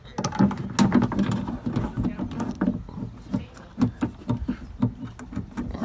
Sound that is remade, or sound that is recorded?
recorded